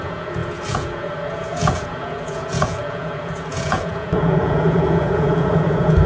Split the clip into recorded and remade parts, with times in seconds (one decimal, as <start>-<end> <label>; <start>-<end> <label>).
0.0-6.1 remade